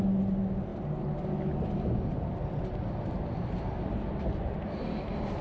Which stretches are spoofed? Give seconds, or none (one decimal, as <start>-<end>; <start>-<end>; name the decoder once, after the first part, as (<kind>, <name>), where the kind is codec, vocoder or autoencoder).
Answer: none